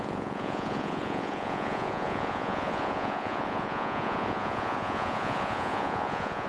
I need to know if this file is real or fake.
fake